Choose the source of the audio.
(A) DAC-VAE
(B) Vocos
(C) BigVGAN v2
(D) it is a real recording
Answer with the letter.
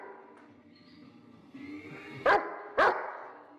D